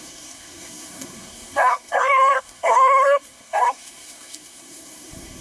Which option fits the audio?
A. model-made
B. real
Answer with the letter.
A